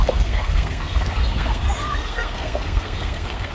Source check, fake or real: fake